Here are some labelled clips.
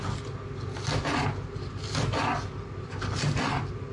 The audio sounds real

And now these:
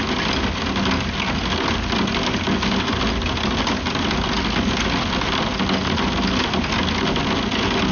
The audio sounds real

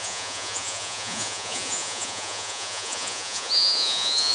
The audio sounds fake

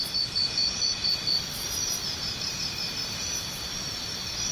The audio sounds real